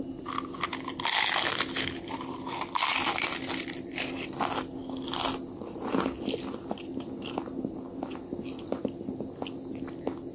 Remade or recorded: recorded